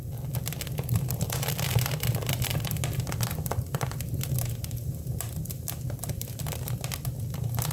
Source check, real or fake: fake